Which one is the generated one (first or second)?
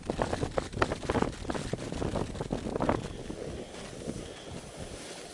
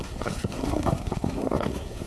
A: second